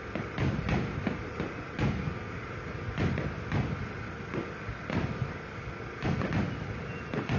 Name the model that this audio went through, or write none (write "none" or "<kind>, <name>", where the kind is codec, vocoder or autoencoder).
none